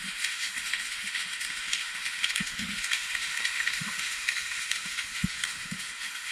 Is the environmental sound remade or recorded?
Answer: remade